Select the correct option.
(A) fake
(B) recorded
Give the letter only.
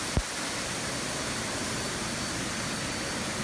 B